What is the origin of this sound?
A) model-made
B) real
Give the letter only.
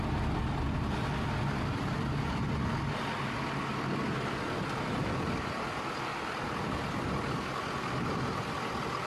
B